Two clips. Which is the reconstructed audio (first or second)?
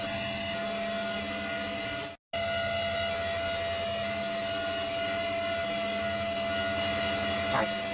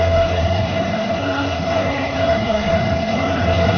second